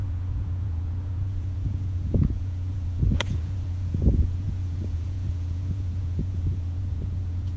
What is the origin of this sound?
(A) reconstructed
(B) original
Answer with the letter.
A